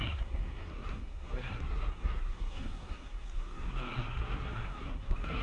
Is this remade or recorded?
remade